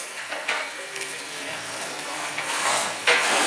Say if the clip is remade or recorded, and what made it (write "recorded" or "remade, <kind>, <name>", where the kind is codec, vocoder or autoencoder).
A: remade, codec, SNAC